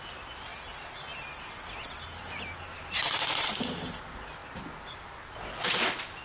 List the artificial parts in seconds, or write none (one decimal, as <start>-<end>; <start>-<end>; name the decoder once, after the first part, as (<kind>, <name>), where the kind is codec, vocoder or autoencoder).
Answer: none